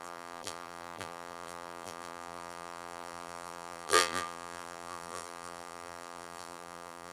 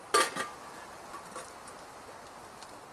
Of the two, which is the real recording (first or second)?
second